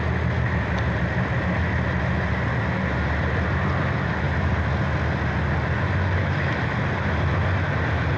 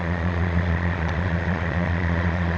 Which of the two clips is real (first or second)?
first